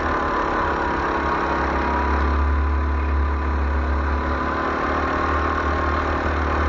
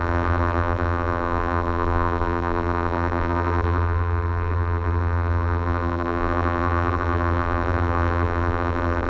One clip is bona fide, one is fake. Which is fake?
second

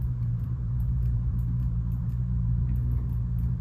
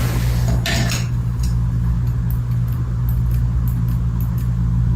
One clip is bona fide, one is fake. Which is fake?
first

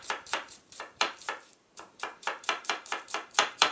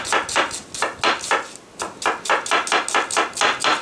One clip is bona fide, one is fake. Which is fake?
first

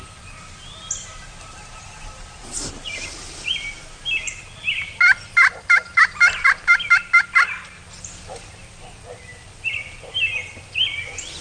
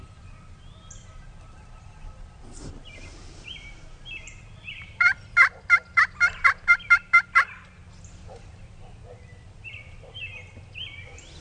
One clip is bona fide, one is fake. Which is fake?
second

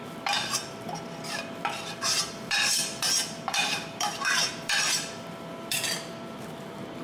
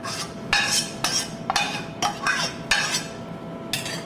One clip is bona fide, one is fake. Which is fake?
first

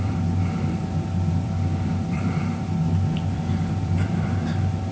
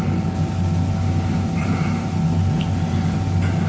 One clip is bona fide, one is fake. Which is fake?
first